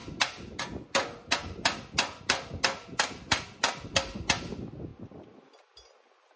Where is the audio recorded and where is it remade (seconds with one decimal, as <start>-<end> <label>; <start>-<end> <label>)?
0.0-6.4 recorded